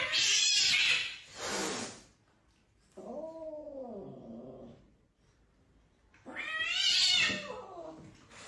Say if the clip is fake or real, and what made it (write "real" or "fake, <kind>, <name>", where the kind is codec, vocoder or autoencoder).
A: real